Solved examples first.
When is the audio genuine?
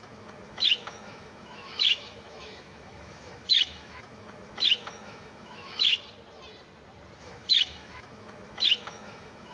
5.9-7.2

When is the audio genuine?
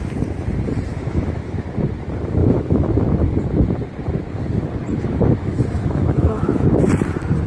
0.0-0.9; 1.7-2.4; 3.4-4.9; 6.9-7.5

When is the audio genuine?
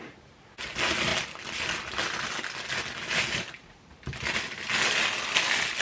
0.0-5.8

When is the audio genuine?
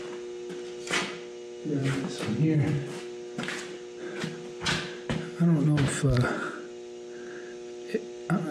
0.0-8.5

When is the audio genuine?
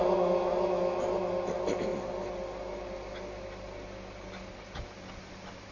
0.0-5.7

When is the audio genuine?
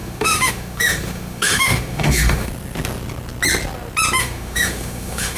2.5-4.2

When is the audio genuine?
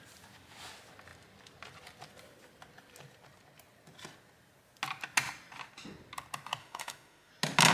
0.0-6.6; 7.3-7.7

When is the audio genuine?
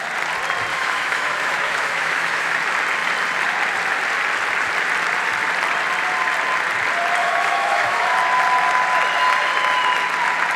0.0-0.7; 2.6-7.2; 8.1-10.6